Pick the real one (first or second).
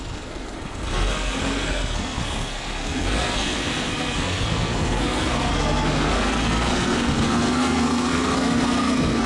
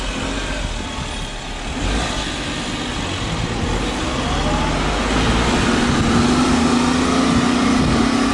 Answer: second